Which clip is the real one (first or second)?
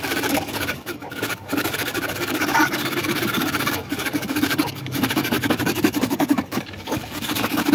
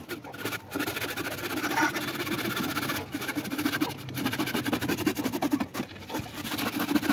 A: second